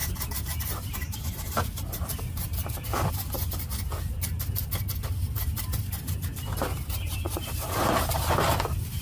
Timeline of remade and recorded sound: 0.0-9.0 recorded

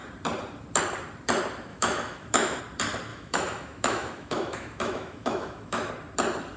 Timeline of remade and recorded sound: 0.0-1.7 recorded; 1.7-2.6 remade; 2.6-3.1 recorded; 3.1-5.9 remade; 5.9-6.6 recorded